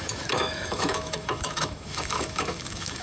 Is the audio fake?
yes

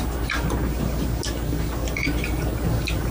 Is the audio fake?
no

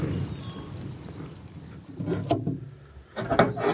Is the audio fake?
no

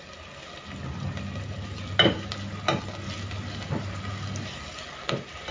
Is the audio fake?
no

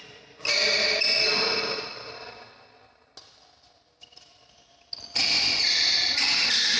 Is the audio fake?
no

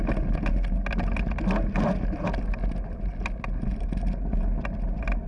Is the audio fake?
no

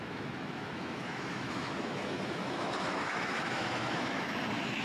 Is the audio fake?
yes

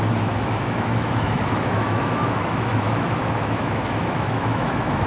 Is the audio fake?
yes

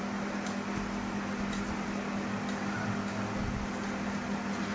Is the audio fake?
no